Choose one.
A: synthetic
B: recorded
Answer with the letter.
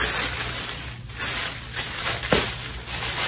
B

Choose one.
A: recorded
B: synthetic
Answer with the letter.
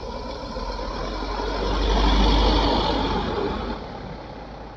A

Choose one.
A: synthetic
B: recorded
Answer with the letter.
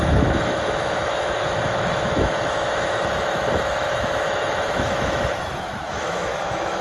A